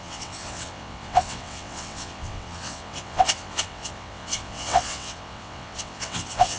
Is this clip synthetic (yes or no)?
yes